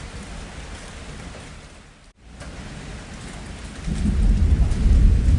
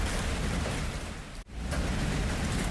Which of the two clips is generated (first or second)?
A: second